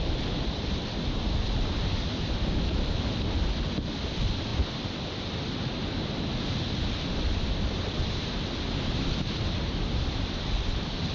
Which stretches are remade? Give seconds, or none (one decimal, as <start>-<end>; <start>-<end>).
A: none